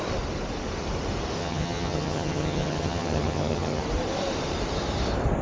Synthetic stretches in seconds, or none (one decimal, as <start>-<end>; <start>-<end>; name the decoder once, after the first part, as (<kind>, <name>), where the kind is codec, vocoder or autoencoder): 1.4-3.8 (vocoder, HiFi-GAN)